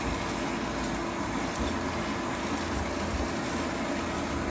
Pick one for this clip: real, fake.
real